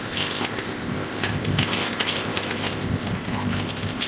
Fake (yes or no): yes